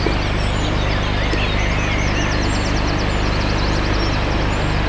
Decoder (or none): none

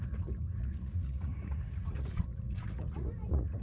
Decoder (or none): vocoder, Vocos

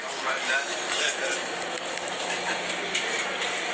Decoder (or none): none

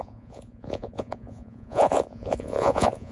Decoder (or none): vocoder, Vocos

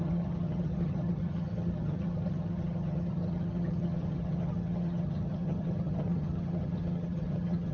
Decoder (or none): vocoder, HiFi-GAN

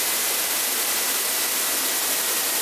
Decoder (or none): none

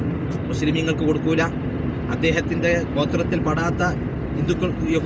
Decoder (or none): none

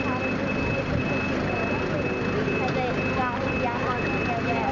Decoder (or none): none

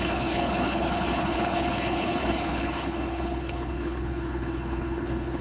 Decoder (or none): codec, HILCodec